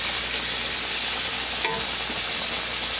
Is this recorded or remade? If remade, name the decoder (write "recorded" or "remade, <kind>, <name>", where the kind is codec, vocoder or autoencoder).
recorded